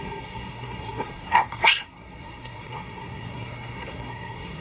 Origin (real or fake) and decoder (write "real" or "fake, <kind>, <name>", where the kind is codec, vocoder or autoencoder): fake, codec, SNAC